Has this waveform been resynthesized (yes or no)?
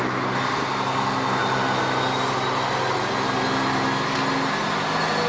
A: no